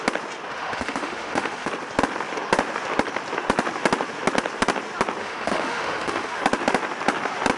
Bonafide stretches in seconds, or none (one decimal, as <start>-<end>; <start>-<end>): 0.0-0.5; 1.7-5.2; 6.4-7.6